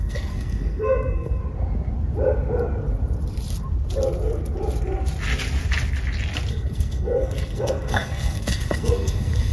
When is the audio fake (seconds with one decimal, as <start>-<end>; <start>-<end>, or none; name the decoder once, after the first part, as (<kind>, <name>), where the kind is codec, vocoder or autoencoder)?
0.0-1.4 (codec, SNAC); 6.5-9.5